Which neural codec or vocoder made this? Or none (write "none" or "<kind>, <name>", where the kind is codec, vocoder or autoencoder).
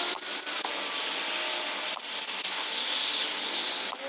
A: none